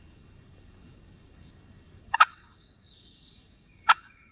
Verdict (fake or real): fake